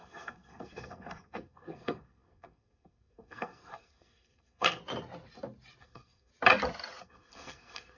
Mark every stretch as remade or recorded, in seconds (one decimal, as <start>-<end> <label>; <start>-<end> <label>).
0.0-4.8 remade; 4.8-5.8 recorded; 5.8-6.3 remade; 6.3-7.0 recorded; 7.0-8.0 remade